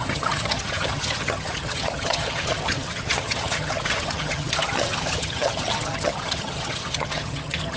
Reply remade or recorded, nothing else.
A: remade